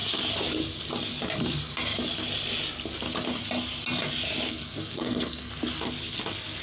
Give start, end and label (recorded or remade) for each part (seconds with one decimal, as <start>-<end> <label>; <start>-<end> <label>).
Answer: 0.0-4.5 recorded; 4.5-5.5 remade; 5.5-6.6 recorded